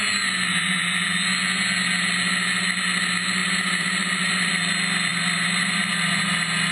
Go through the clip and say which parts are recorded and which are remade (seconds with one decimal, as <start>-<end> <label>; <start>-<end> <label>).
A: 0.0-3.4 recorded; 3.4-4.5 remade; 4.5-5.1 recorded; 5.1-6.2 remade; 6.2-6.7 recorded